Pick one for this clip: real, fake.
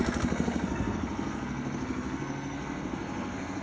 fake